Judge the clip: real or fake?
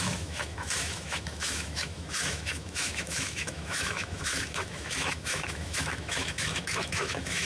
fake